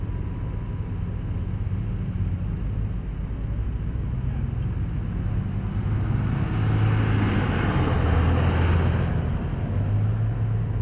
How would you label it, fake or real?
real